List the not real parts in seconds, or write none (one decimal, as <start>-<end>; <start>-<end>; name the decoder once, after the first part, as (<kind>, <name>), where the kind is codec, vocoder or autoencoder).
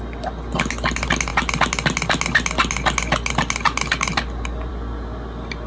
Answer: none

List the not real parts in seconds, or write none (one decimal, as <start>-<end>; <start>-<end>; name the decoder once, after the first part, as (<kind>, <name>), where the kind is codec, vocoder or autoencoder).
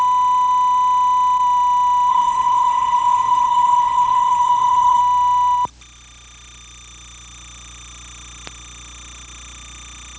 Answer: 2.1-5.0 (codec, HILCodec)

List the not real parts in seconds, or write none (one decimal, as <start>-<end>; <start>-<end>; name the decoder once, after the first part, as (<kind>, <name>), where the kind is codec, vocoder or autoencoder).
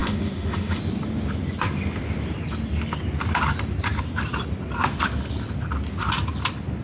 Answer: 0.0-0.8 (autoencoder, DAC-VAE)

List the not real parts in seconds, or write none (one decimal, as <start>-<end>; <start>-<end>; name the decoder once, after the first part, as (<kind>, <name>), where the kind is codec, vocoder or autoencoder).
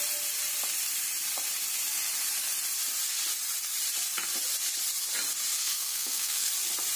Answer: 5.5-6.5 (codec, SNAC)